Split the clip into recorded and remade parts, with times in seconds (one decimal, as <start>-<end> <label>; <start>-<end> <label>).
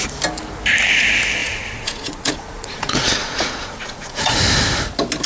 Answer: 0.0-1.4 recorded; 1.4-4.4 remade; 4.4-5.3 recorded